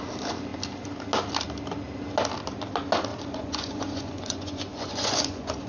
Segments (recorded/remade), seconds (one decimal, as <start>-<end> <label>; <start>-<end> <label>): 0.0-3.1 recorded; 3.1-5.7 remade